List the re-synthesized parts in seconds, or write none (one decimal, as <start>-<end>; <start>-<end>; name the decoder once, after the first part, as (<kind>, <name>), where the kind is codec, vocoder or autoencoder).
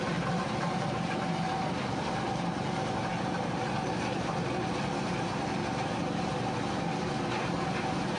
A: 0.0-8.2 (vocoder, BigVGAN v2)